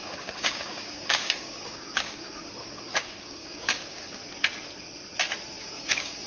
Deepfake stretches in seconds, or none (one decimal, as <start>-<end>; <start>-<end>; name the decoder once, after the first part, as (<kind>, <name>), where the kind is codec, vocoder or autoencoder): 0.0-4.2 (codec, DAC); 5.6-6.3